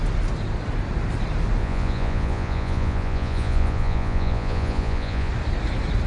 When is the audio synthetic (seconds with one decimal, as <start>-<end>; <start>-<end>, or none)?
1.6-5.3